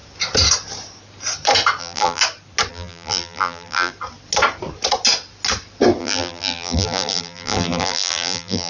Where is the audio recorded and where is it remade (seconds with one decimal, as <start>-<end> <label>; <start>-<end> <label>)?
0.0-1.8 recorded; 1.8-2.2 remade; 2.2-2.7 recorded; 2.7-3.9 remade; 3.9-6.0 recorded; 6.0-8.7 remade